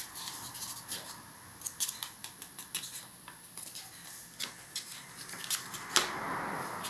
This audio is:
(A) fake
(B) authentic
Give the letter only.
B